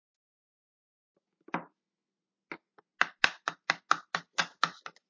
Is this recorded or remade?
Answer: recorded